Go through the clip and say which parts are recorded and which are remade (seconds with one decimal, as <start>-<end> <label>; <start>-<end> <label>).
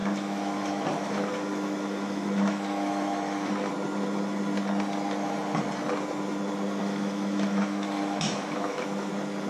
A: 0.0-3.7 remade; 3.7-6.8 recorded; 6.8-9.1 remade; 9.1-9.5 recorded